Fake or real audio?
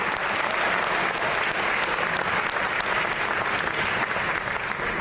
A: real